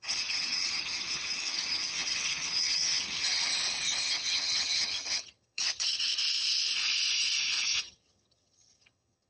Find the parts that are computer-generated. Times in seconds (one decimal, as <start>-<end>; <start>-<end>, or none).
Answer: 0.0-3.5; 4.1-6.2; 7.8-9.3